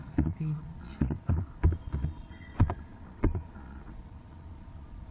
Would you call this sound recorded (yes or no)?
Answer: no